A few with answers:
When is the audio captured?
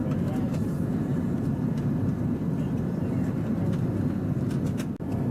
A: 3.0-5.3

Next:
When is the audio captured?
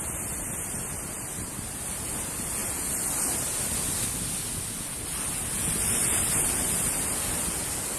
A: 0.0-8.0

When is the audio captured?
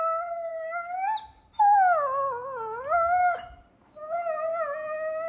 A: 0.0-5.3